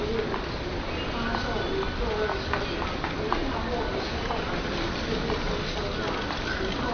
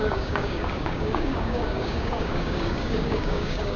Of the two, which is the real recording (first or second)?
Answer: first